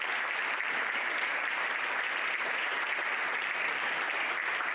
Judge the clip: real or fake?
real